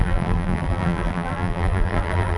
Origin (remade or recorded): remade